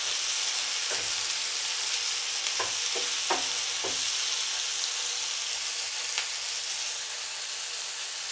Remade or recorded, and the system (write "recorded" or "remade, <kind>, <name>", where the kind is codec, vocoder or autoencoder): recorded